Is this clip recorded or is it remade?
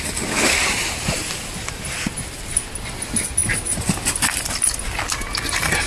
recorded